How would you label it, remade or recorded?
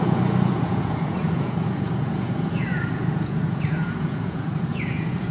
remade